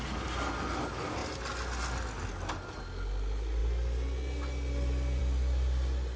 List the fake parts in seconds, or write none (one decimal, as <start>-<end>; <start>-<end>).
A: none

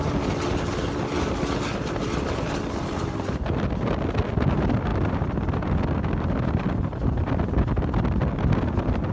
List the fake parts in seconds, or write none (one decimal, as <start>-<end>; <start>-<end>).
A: none

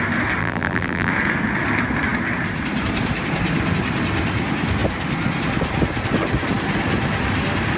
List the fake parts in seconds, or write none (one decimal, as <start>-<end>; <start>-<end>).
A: 0.4-1.1

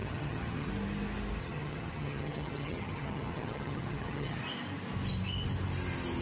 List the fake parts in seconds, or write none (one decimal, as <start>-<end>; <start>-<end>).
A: 0.0-0.7; 1.4-4.4

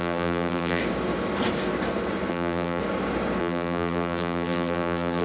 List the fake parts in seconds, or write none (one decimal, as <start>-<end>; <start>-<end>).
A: 0.0-0.8; 2.3-2.8; 3.4-5.2

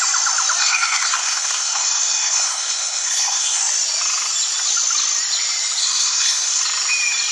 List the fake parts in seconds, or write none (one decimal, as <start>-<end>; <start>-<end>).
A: 0.6-3.6; 5.8-6.6